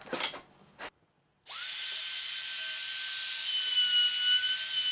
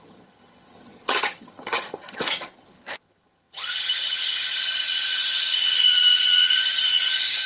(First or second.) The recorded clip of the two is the first